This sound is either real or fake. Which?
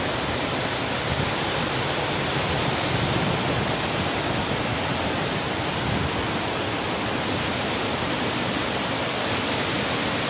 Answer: real